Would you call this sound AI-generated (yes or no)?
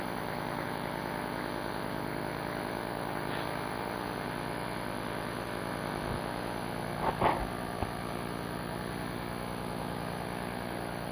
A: no